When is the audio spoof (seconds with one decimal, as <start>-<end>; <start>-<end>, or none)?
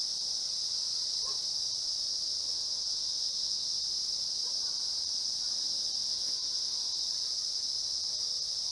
2.5-3.8; 6.0-6.8